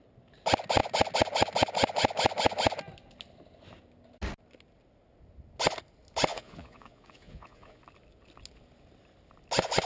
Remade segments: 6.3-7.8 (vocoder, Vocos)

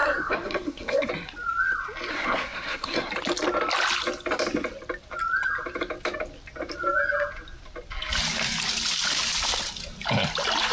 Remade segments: 0.0-1.1 (codec, SNAC); 2.1-3.1